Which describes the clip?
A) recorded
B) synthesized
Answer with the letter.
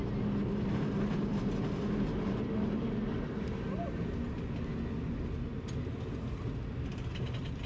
A